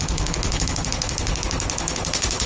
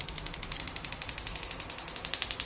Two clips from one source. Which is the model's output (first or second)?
first